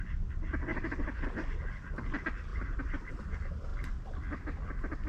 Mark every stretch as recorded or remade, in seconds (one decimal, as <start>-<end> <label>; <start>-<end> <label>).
0.0-0.7 recorded; 0.7-1.2 remade; 1.2-2.5 recorded; 2.5-3.1 remade; 3.1-5.1 recorded

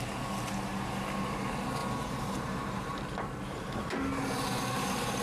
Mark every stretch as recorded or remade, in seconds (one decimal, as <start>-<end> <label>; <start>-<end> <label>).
0.0-5.2 recorded

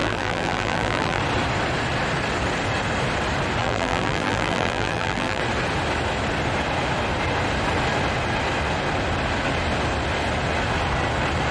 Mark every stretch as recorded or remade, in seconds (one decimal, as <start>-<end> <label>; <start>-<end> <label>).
0.0-1.2 remade; 1.2-3.6 recorded; 3.6-5.4 remade; 5.4-11.5 recorded

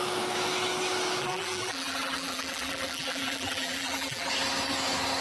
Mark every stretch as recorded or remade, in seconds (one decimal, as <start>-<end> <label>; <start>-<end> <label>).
0.0-1.2 recorded; 1.2-4.3 remade; 4.3-5.2 recorded

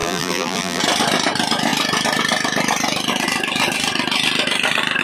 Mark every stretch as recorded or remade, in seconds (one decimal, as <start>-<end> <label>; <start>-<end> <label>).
0.0-0.8 remade; 0.8-5.0 recorded

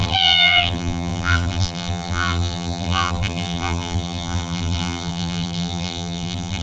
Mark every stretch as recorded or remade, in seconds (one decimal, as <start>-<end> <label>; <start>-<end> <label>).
0.0-6.6 remade

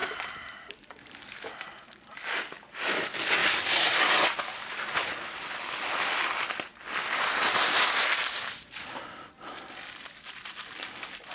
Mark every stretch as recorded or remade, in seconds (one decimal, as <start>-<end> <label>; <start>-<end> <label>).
0.0-0.7 recorded; 0.7-3.4 remade; 3.4-3.9 recorded; 3.9-6.7 remade; 6.7-9.5 recorded; 9.5-11.3 remade